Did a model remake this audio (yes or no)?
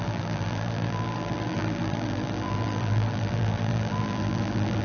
yes